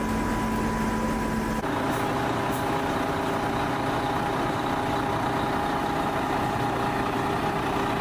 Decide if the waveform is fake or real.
real